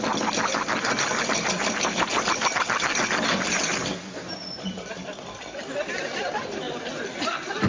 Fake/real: real